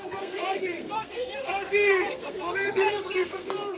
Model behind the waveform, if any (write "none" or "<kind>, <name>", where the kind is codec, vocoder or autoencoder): codec, SNAC